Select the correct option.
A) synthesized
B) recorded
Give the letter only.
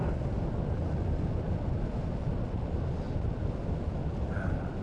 B